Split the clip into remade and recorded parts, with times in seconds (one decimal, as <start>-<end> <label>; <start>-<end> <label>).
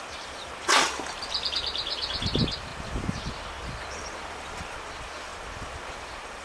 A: 0.0-6.4 remade